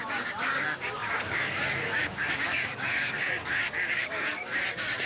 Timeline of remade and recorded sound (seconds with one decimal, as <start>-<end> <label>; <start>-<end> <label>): 0.0-5.1 remade